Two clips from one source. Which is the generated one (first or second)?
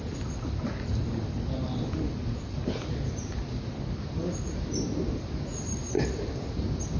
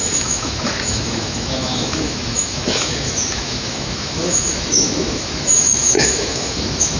second